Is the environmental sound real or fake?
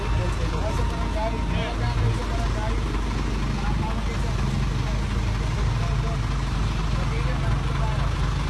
real